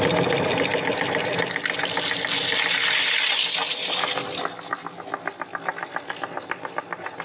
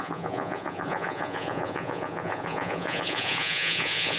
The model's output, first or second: second